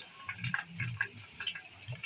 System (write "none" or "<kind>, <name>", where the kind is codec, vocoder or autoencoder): none